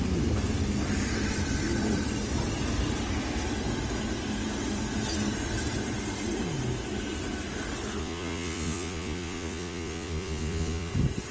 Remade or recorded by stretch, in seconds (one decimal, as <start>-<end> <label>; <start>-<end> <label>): 0.0-8.0 recorded; 8.0-10.9 remade; 10.9-11.3 recorded